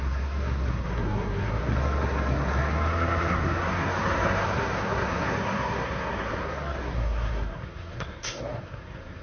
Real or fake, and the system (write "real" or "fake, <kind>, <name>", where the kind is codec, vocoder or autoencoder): fake, codec, SNAC